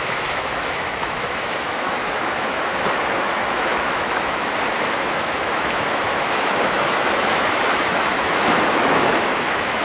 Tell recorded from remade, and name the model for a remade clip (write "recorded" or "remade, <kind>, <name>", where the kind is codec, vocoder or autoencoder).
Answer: remade, autoencoder, DAC-VAE